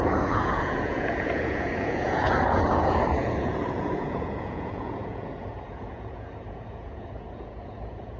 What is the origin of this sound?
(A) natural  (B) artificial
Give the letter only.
B